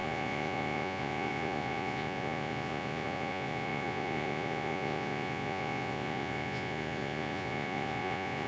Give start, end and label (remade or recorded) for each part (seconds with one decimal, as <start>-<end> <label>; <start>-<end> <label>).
0.0-8.5 remade